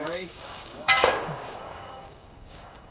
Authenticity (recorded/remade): remade